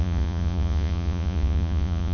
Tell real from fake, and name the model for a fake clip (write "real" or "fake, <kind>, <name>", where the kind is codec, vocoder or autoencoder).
fake, vocoder, Vocos